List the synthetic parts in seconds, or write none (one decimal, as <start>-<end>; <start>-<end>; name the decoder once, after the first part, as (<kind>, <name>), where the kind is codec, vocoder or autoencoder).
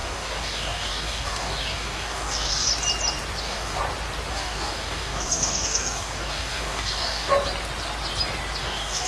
0.0-2.7 (codec, DAC); 3.4-3.8; 4.3-7.3; 8.6-9.1